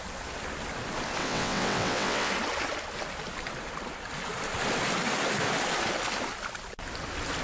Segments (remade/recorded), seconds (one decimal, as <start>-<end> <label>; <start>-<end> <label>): 0.0-1.2 recorded; 1.2-2.3 remade; 2.3-7.4 recorded